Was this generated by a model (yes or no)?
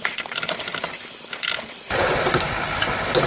no